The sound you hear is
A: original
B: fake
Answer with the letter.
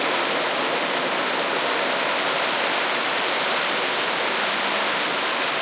A